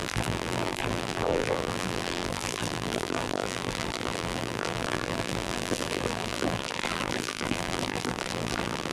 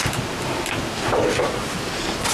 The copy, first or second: first